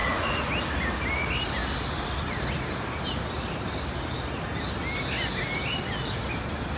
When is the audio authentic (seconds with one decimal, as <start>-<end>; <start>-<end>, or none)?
0.5-6.8